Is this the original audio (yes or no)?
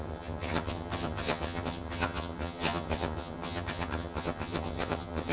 no